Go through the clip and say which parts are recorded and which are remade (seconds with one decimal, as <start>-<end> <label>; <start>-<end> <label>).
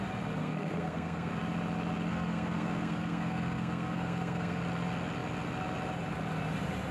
0.0-0.4 recorded; 0.4-1.3 remade; 1.3-2.1 recorded; 2.1-4.6 remade; 4.6-6.9 recorded